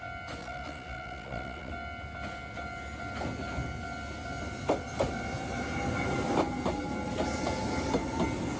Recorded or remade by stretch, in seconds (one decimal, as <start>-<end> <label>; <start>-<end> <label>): 0.0-0.4 recorded; 0.4-1.7 remade; 1.7-8.6 recorded